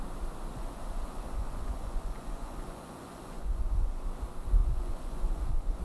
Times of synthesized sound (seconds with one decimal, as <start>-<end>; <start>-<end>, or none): 0.5-4.0; 4.6-5.8